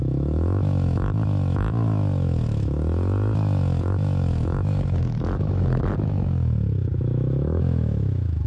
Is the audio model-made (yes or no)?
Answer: yes